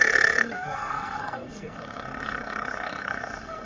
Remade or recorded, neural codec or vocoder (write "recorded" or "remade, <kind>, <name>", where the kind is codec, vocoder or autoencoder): remade, codec, SNAC